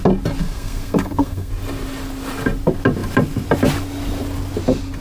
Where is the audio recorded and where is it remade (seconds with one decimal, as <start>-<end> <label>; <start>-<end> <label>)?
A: 0.0-0.4 recorded; 0.4-1.5 remade; 1.5-5.0 recorded